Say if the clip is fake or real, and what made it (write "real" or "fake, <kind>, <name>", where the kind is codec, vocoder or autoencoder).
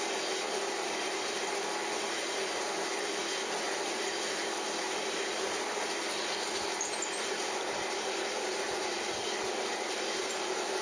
real